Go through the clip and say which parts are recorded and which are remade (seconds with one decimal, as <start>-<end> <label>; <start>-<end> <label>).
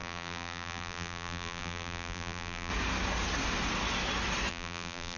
0.0-2.7 remade; 2.7-4.5 recorded; 4.5-5.2 remade